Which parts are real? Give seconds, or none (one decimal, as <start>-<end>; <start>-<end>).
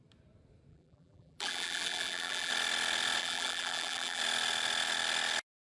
0.0-0.7; 2.5-3.2; 4.2-5.7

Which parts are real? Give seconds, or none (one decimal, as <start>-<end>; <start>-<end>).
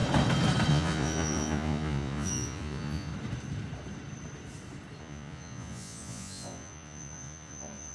0.0-0.7; 3.1-5.0